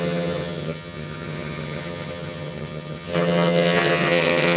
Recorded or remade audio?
remade